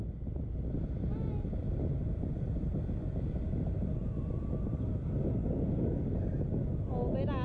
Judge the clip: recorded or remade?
recorded